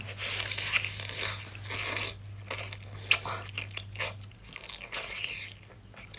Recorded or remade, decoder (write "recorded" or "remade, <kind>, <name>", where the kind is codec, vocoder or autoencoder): recorded